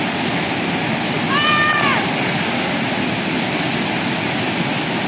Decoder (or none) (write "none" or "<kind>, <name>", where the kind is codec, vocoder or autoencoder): none